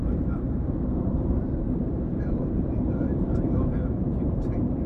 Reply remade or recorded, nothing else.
remade